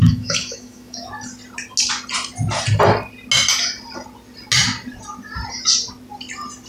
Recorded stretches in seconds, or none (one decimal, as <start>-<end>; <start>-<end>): 1.1-6.7